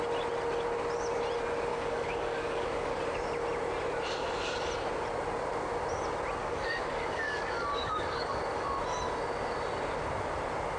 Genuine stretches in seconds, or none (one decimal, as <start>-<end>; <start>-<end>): 0.0-1.7; 3.0-6.4; 8.4-10.8